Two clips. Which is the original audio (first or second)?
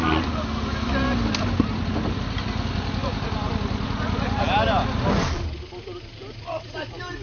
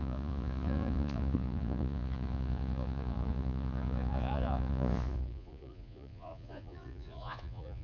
first